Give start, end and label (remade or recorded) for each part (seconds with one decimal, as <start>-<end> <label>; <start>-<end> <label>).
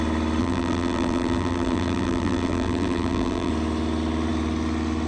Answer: 0.0-0.4 recorded; 0.4-3.5 remade; 3.5-5.1 recorded